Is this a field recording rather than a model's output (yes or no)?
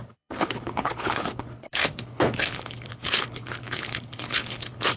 no